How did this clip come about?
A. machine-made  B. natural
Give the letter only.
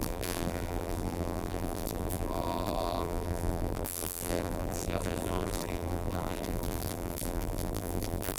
A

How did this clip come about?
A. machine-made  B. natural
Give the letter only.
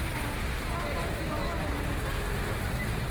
B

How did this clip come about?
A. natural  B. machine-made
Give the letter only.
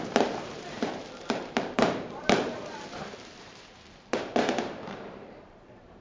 B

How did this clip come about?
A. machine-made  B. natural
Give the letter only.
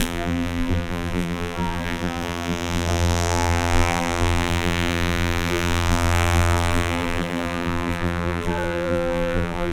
A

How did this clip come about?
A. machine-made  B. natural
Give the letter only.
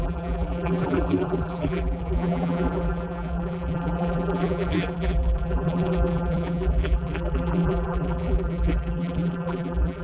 A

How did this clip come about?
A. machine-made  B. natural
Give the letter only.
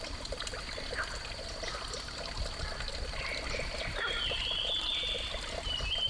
B